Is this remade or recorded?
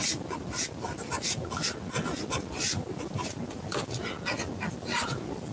recorded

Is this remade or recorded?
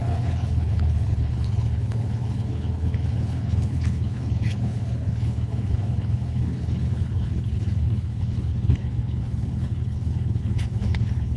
remade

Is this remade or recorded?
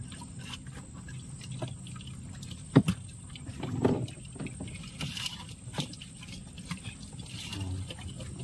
recorded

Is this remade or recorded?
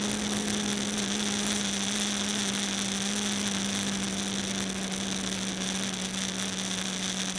recorded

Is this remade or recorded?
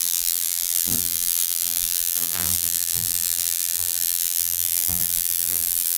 remade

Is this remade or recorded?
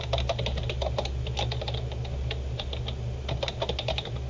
recorded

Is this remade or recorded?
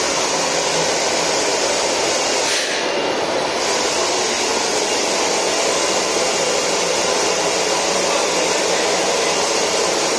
remade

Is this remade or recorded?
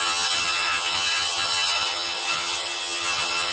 remade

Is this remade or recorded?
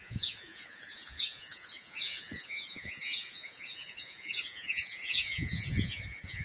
remade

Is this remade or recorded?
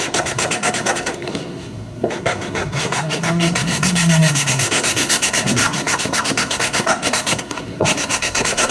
remade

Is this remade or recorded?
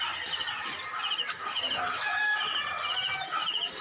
recorded